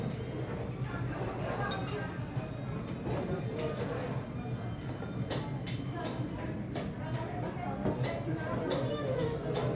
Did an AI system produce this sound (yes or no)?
no